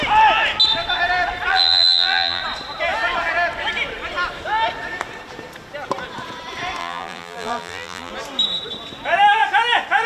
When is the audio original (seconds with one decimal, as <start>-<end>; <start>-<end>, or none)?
0.0-1.5; 2.4-6.8; 8.1-10.1